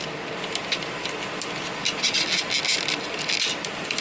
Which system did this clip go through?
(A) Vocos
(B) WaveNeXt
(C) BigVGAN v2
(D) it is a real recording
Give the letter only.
D